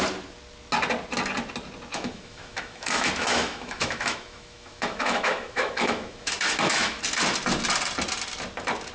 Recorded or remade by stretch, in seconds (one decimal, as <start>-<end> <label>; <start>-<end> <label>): 0.0-1.9 recorded; 1.9-7.0 remade; 7.0-8.9 recorded